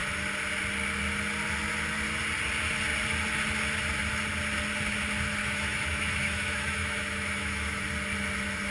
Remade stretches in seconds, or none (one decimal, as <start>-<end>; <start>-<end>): 5.4-7.8